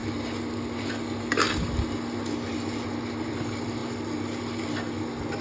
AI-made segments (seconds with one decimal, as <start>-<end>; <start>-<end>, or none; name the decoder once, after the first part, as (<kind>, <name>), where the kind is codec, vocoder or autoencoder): none